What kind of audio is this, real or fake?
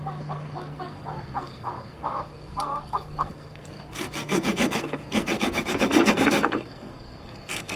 fake